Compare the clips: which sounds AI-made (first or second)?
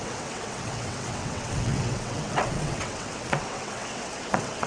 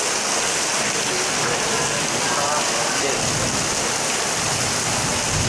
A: first